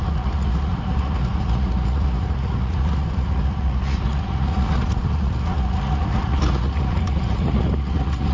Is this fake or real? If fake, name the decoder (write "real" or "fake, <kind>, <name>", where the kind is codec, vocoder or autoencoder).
fake, vocoder, Vocos